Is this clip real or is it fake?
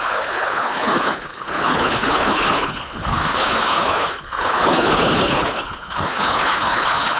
fake